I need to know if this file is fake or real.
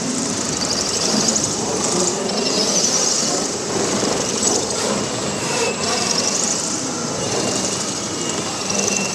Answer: fake